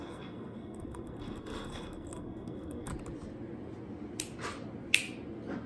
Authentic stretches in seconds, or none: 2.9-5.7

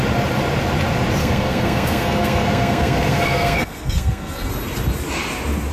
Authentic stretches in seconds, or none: 0.0-1.2; 4.5-5.7

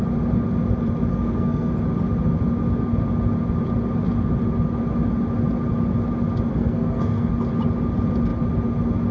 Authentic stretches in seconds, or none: 0.0-1.1; 1.7-6.5; 7.3-9.1

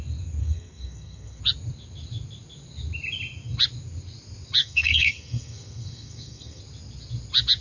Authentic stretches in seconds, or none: 0.0-0.4; 1.4-4.6; 6.6-7.6

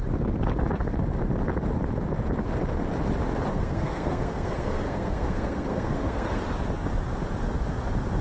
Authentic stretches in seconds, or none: 0.0-3.5; 6.4-8.2